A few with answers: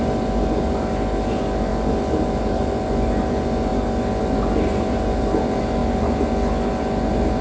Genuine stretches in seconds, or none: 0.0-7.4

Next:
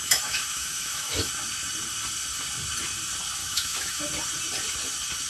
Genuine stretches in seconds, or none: 1.3-3.4; 4.0-5.3

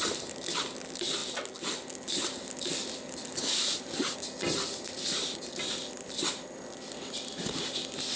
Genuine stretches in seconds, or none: 0.0-8.2

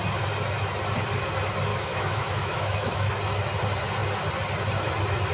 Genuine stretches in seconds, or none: 0.0-1.7; 3.1-5.3

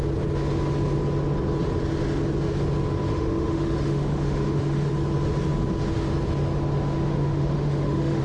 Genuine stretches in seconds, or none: 0.0-3.1; 4.9-7.1

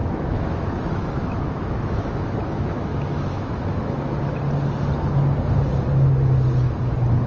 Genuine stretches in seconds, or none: 4.4-7.3